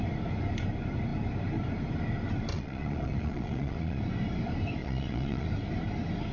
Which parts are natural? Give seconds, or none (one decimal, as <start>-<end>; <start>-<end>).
0.0-2.5; 4.0-4.8; 5.5-6.3